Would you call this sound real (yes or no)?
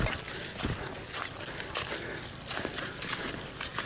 yes